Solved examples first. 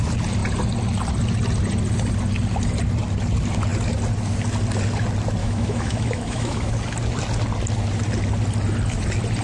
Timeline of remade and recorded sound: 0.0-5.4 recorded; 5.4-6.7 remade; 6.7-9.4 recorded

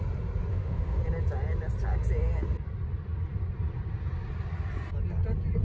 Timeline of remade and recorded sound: 0.0-0.5 recorded; 0.5-1.0 remade; 1.0-5.6 recorded

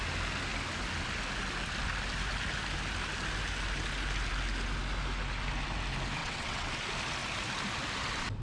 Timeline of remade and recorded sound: 0.0-6.2 recorded; 6.2-6.7 remade; 6.7-8.4 recorded

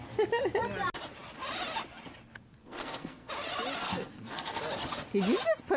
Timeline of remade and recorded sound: 0.0-2.6 recorded; 2.6-3.3 remade; 3.3-3.8 recorded; 3.8-4.6 remade; 4.6-5.8 recorded

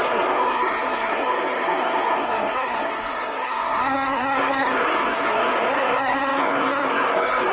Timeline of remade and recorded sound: 0.0-7.5 remade

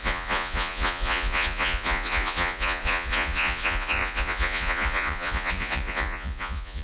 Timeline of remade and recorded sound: 0.0-6.8 remade